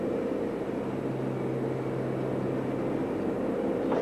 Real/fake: real